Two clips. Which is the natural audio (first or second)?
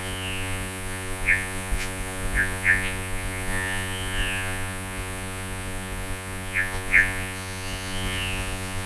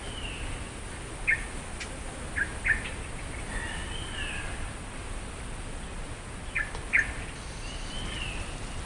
second